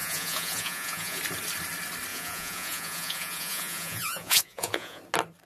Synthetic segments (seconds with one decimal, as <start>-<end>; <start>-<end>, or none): 0.0-1.2; 2.1-5.0